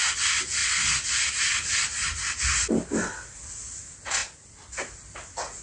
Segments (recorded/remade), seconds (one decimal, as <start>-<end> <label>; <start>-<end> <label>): 0.0-5.6 recorded